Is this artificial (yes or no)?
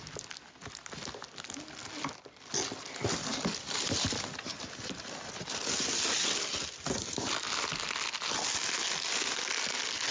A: no